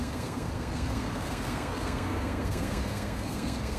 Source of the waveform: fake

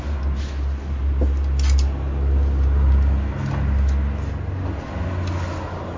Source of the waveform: real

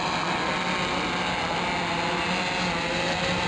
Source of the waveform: real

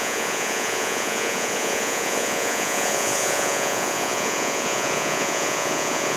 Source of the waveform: fake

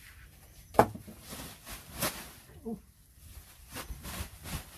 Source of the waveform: fake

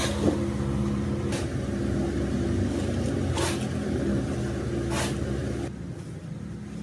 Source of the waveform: real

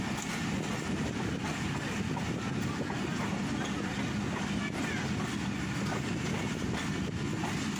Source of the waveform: real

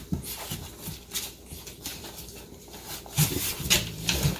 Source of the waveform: real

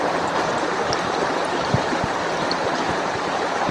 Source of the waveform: fake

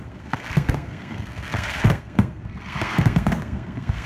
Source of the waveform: fake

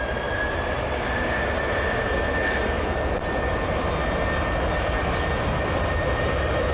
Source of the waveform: real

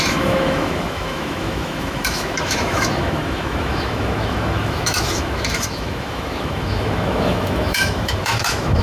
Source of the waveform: fake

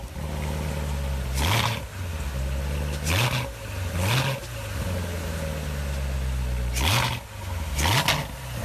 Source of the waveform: real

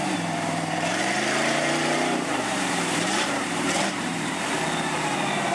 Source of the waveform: fake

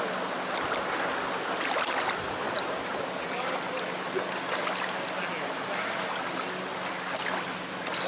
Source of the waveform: real